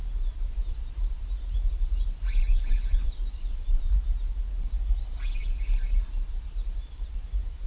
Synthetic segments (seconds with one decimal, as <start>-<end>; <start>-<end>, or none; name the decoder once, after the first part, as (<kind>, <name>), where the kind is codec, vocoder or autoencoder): 0.0-4.4 (vocoder, BigVGAN v2); 6.8-7.7